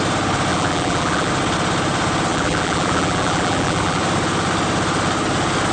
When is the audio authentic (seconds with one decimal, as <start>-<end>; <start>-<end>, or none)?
0.0-0.5; 1.3-2.3; 4.0-5.7